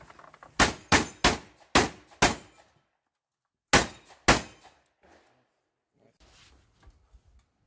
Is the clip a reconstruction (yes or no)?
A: no